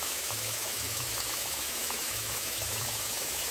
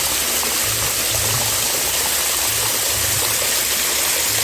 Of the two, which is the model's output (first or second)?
first